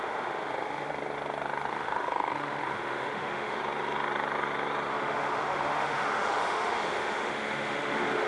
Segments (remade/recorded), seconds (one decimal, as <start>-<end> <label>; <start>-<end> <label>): 0.0-0.9 remade; 0.9-1.7 recorded; 1.7-3.6 remade; 3.6-4.9 recorded; 4.9-8.3 remade